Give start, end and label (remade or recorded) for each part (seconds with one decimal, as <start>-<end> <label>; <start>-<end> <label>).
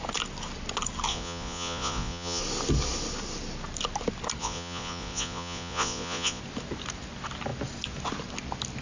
0.0-1.1 recorded; 1.1-2.4 remade; 2.4-4.4 recorded; 4.4-6.4 remade; 6.4-8.8 recorded